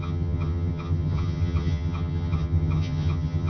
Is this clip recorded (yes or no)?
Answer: no